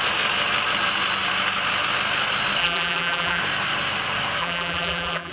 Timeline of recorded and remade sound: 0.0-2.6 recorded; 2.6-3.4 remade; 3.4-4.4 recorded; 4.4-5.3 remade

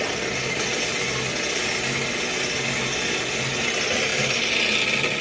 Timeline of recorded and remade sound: 0.0-5.2 recorded

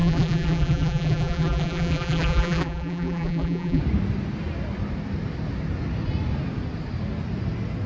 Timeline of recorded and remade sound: 0.0-3.8 remade; 3.8-7.9 recorded

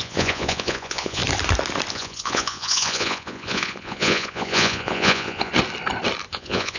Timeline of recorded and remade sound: 0.0-1.2 remade; 1.2-1.9 recorded; 1.9-5.5 remade; 5.5-6.3 recorded; 6.3-6.8 remade

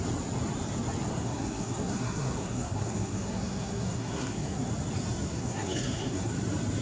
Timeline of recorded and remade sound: 0.0-1.1 recorded; 1.1-4.7 remade; 4.7-5.3 recorded; 5.3-6.3 remade; 6.3-6.8 recorded

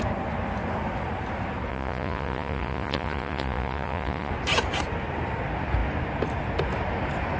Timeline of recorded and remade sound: 0.0-1.7 recorded; 1.7-4.3 remade; 4.3-7.4 recorded

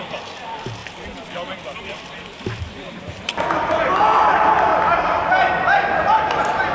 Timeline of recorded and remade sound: 0.0-4.7 remade; 4.7-5.5 recorded; 5.5-6.7 remade